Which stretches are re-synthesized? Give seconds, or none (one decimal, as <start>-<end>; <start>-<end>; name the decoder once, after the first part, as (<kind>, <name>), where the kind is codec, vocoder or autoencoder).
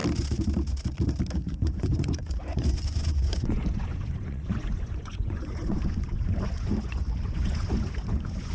1.4-8.5 (vocoder, Vocos)